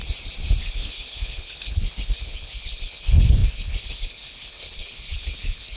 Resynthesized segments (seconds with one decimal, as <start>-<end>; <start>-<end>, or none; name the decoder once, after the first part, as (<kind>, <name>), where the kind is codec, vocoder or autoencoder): 0.6-5.8 (codec, HILCodec)